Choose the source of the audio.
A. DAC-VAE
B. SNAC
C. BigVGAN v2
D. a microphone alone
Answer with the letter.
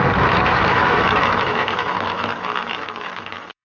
A